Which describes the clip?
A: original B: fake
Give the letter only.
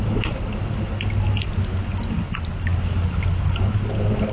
A